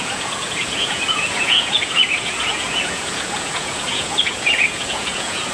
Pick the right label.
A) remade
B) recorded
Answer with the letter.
A